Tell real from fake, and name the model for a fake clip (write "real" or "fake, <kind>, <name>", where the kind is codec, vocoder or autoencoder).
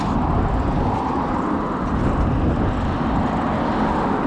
real